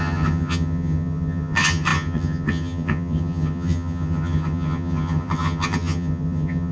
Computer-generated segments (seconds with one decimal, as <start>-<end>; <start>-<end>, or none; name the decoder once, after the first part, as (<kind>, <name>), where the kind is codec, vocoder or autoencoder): 0.0-6.7 (vocoder, HiFi-GAN)